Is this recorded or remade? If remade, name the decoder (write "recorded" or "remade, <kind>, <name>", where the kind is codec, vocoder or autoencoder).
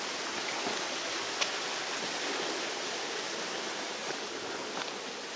recorded